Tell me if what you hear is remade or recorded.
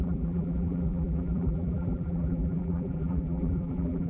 remade